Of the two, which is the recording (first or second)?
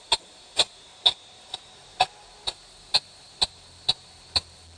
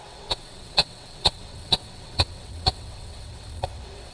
first